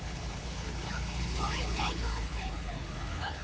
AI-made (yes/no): yes